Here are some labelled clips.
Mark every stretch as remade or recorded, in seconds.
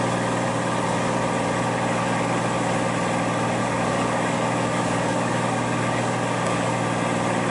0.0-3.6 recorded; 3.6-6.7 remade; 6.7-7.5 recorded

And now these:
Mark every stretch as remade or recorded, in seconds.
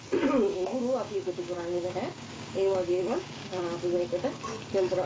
0.0-0.5 recorded; 0.5-3.6 remade; 3.6-5.1 recorded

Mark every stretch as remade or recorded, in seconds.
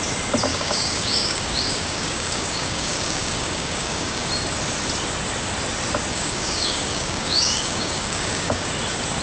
0.0-0.5 recorded; 0.5-4.3 remade; 4.3-6.1 recorded; 6.1-8.7 remade; 8.7-9.2 recorded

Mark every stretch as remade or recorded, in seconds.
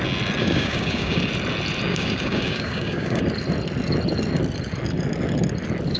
0.0-0.4 recorded; 0.4-1.3 remade; 1.3-1.9 recorded; 1.9-3.2 remade; 3.2-6.0 recorded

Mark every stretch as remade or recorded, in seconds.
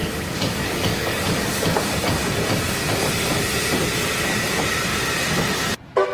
0.0-1.5 remade; 1.5-6.1 recorded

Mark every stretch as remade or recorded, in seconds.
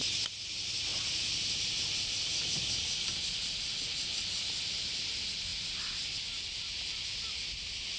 0.0-8.0 recorded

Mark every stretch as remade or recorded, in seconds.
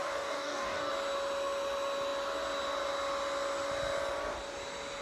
0.0-0.9 remade; 0.9-5.0 recorded